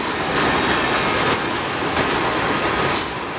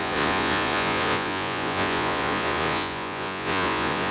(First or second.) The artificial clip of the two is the second